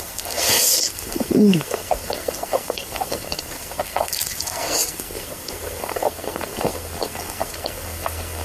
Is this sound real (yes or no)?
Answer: no